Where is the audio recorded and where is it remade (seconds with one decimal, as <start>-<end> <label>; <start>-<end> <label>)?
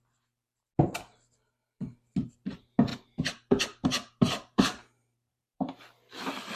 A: 0.0-2.9 recorded; 2.9-5.8 remade; 5.8-6.6 recorded